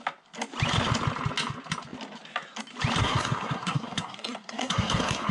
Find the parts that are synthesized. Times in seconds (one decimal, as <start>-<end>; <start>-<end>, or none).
3.0-5.3